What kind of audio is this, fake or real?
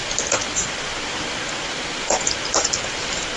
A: real